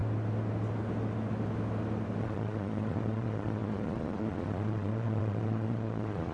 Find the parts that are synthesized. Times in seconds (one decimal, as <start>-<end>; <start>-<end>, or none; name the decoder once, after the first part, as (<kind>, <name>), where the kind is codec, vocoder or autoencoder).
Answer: 2.2-6.3 (vocoder, Vocos)